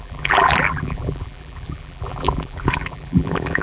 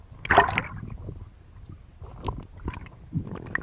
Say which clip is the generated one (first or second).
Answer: first